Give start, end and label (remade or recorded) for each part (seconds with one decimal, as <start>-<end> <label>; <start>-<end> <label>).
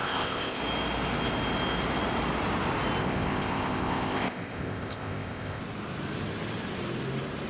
0.0-0.6 remade; 0.6-3.0 recorded; 3.0-5.6 remade; 5.6-7.5 recorded